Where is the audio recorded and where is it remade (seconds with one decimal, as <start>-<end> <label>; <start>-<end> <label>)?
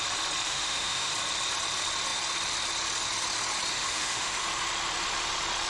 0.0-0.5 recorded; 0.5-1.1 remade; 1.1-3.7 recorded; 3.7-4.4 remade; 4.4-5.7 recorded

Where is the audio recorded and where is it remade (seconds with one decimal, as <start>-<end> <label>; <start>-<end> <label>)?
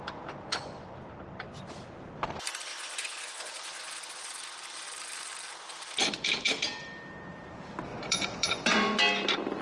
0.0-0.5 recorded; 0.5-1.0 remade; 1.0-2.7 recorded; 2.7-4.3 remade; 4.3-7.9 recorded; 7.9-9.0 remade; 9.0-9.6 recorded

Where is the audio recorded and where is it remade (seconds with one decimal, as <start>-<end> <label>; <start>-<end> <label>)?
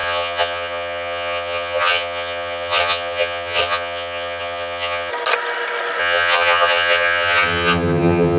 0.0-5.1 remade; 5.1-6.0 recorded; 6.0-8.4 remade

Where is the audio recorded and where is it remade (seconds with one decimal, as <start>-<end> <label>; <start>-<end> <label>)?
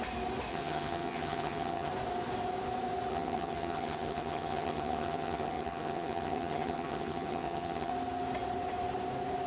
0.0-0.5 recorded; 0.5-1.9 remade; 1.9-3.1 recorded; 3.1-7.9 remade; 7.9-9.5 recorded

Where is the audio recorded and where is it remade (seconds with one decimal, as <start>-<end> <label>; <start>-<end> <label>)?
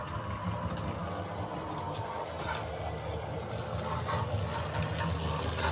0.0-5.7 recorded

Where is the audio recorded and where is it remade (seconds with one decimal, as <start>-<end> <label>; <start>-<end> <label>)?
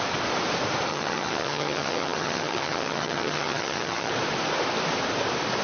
0.0-0.9 recorded; 0.9-4.1 remade; 4.1-5.6 recorded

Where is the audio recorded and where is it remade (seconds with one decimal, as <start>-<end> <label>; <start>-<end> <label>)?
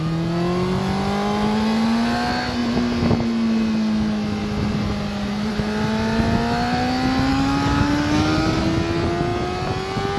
0.0-7.3 recorded; 7.3-8.6 remade; 8.6-10.2 recorded